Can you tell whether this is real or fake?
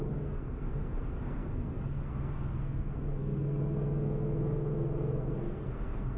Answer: fake